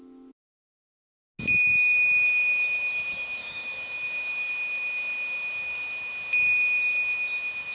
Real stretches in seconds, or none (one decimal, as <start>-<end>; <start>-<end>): 0.0-3.4; 4.5-7.7